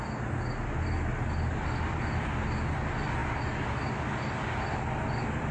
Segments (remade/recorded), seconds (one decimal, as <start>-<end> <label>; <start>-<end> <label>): 0.0-5.5 recorded